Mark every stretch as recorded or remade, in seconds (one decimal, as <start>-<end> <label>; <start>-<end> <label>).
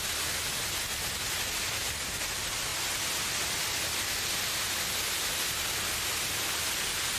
0.0-7.2 recorded